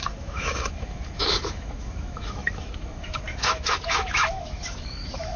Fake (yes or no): yes